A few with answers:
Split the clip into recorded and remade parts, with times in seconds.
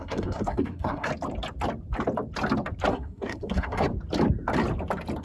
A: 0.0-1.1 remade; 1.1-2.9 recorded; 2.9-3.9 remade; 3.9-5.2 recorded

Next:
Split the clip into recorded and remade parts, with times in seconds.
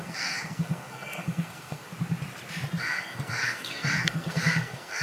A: 0.0-1.9 remade; 1.9-2.8 recorded; 2.8-5.0 remade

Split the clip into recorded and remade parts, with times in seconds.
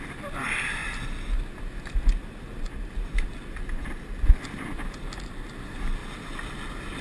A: 0.0-7.0 recorded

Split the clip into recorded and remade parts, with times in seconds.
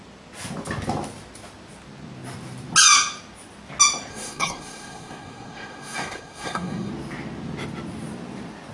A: 0.0-4.1 recorded; 4.1-6.9 remade; 6.9-8.7 recorded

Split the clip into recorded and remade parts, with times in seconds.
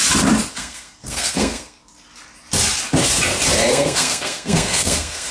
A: 0.0-0.5 recorded; 0.5-1.8 remade; 1.8-3.7 recorded; 3.7-5.3 remade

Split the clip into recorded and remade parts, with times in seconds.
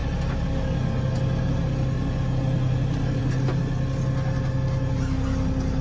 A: 0.0-5.8 recorded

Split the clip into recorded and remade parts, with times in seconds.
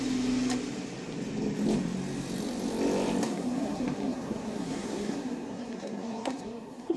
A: 0.0-3.2 recorded; 3.2-7.0 remade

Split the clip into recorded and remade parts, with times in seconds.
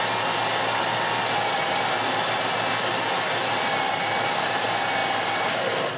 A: 0.0-6.0 recorded